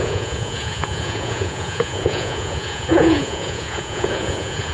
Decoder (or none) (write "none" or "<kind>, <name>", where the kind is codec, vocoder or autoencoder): vocoder, Vocos